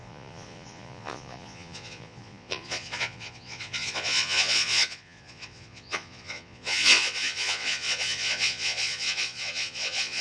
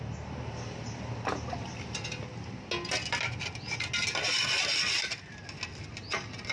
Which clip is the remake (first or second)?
first